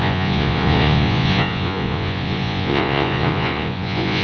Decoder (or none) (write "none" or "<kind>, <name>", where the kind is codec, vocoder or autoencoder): vocoder, Vocos